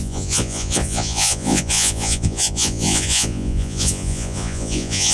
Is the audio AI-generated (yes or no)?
yes